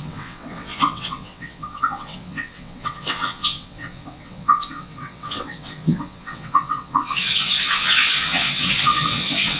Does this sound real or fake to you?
fake